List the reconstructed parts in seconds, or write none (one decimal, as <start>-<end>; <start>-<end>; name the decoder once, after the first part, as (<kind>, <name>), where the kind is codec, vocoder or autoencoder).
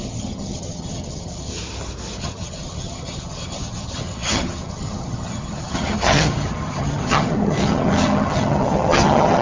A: 0.0-1.5 (vocoder, HiFi-GAN); 2.2-9.4